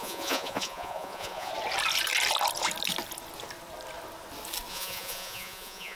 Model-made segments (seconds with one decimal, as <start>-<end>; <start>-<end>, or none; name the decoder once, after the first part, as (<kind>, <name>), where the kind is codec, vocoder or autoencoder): 0.0-1.5 (vocoder, Vocos); 4.7-6.0